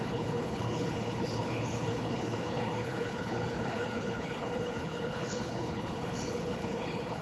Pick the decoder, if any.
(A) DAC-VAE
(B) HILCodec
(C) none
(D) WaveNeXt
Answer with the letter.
B